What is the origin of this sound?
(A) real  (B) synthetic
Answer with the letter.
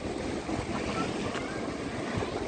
A